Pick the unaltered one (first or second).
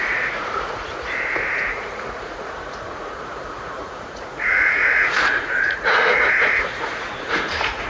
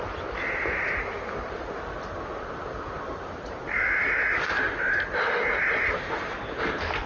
second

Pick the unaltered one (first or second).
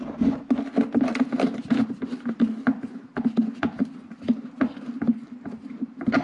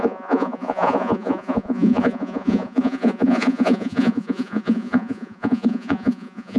first